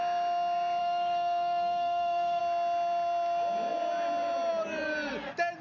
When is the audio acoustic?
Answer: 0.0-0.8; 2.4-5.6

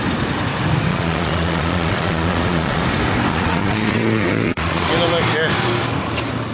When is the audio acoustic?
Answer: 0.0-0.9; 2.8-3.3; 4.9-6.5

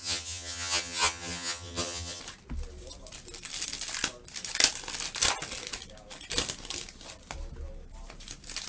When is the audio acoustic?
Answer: 2.2-8.7

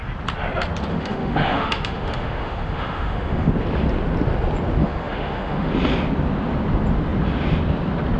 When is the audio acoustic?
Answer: 0.0-0.9; 3.5-4.8; 5.7-8.2

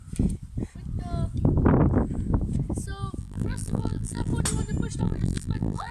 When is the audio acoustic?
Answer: 0.0-3.2; 4.3-5.0